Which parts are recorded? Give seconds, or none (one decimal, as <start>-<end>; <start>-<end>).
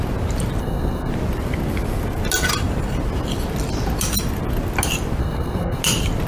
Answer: 0.0-0.6; 1.1-5.2; 5.8-6.3